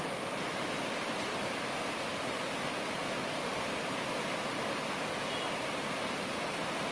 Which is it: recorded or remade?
recorded